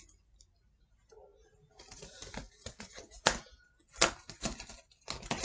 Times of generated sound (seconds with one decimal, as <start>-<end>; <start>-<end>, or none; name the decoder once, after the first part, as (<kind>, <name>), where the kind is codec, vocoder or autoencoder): none